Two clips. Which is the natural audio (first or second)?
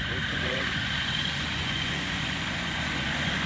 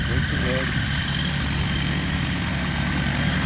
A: second